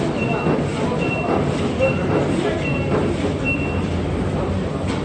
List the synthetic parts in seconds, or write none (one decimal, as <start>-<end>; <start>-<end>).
none